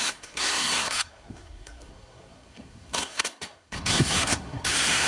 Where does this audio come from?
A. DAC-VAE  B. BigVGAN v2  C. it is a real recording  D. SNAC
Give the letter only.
D